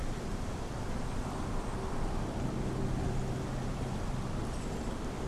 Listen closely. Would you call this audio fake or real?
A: real